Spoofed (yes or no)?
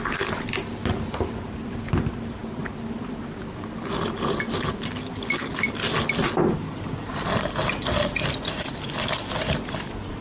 no